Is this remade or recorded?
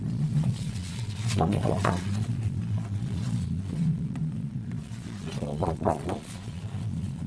remade